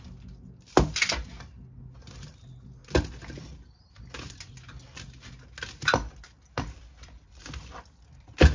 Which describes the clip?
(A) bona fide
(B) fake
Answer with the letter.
A